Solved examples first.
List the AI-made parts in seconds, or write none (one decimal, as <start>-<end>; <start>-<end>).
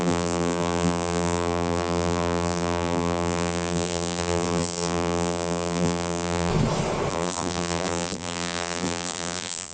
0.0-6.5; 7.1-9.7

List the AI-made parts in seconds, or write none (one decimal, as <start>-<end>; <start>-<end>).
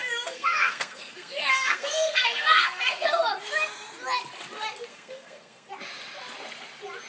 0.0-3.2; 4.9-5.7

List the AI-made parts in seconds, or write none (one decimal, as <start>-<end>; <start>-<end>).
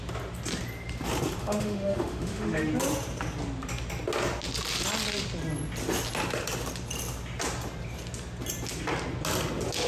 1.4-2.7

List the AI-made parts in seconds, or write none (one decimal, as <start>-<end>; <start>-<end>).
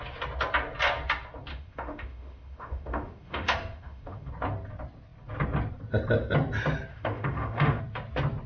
1.5-4.3; 6.9-7.8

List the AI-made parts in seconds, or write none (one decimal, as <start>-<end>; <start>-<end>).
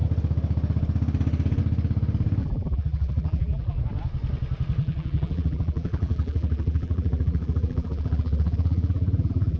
2.4-3.8; 4.8-9.6